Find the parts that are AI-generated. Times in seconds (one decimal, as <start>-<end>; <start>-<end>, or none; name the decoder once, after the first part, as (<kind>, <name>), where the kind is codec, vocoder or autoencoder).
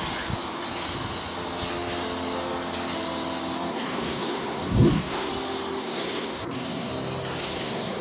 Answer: 3.7-5.3 (codec, SNAC); 5.8-6.9; 7.4-8.0